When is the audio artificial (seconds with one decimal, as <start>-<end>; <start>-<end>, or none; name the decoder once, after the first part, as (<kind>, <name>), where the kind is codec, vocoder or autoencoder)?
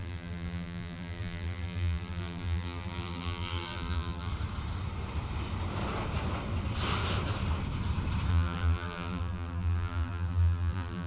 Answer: 0.0-4.3 (vocoder, BigVGAN v2); 8.3-11.1